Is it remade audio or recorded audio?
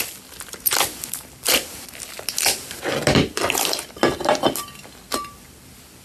recorded